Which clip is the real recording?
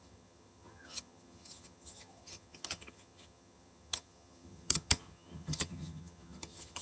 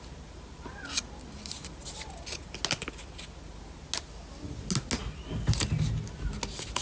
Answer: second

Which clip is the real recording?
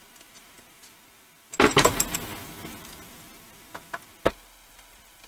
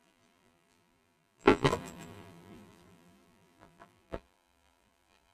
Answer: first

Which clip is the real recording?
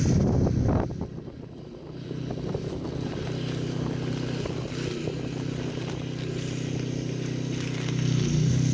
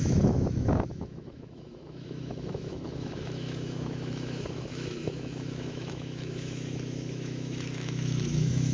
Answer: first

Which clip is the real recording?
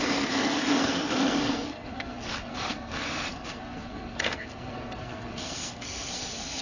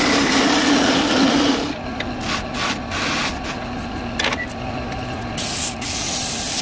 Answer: second